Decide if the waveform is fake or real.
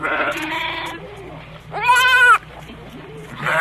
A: real